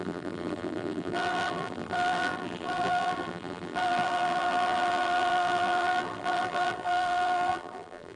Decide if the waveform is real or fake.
fake